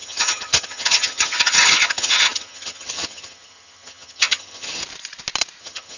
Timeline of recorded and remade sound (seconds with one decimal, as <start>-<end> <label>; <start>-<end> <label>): 0.0-4.8 remade; 4.8-5.6 recorded; 5.6-6.0 remade